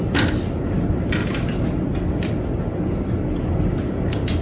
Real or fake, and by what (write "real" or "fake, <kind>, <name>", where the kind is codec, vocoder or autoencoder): real